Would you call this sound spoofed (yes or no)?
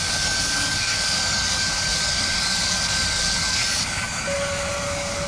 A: yes